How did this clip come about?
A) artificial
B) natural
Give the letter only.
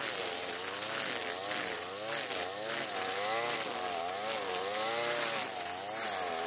B